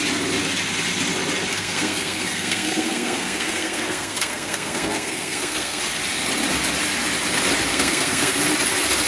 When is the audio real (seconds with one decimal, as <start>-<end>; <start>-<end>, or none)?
0.0-1.5; 5.8-7.7; 8.4-9.1

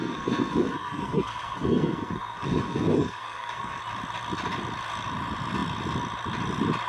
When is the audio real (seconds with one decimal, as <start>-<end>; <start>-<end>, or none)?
3.8-6.9

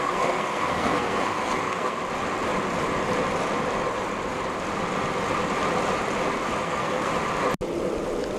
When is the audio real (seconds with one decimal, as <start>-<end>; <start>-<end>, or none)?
2.0-6.6; 7.1-8.4

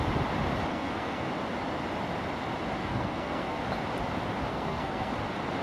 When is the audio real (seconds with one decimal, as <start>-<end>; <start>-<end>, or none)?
0.0-0.7; 1.3-2.8; 3.6-4.5; 5.1-5.6

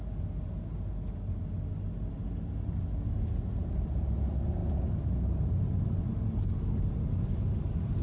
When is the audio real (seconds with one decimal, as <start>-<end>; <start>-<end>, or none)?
0.0-8.0